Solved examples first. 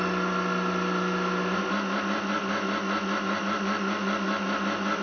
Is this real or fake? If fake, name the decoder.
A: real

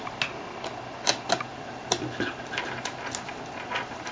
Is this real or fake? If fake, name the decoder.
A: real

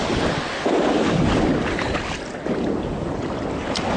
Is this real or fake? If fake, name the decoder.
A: real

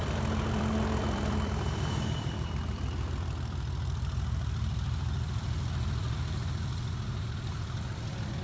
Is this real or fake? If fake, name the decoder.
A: fake, vocoder, BigVGAN v2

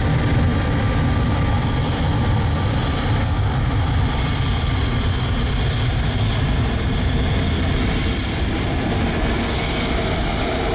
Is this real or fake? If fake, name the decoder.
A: real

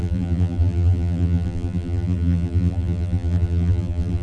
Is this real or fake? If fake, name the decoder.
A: fake, vocoder, BigVGAN v2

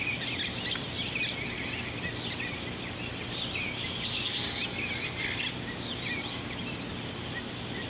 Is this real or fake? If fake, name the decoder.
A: real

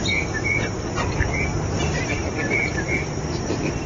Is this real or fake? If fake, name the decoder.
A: real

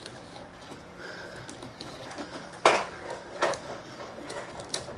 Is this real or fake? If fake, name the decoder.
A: fake, codec, DAC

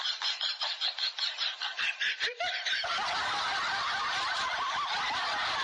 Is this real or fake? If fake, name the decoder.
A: fake, vocoder, BigVGAN v2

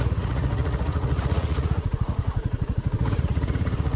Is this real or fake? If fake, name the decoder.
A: fake, vocoder, Vocos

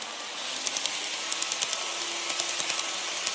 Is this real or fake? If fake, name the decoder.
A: real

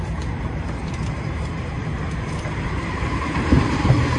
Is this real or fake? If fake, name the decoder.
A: fake, vocoder, BigVGAN v2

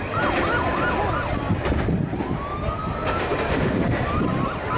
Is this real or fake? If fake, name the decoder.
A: real